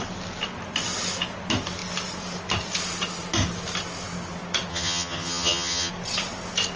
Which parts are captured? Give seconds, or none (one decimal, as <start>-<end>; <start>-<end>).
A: 0.0-4.7; 5.9-6.8